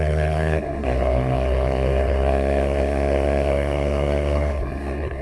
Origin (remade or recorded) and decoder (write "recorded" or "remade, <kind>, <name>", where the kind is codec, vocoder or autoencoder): remade, codec, SNAC